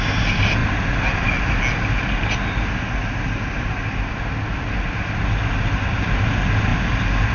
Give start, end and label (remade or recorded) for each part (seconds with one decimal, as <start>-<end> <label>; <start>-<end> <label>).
0.0-5.8 recorded; 5.8-6.3 remade; 6.3-6.7 recorded; 6.7-7.3 remade